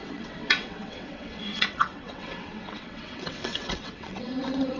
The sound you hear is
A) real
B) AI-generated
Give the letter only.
B